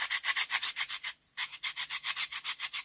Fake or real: real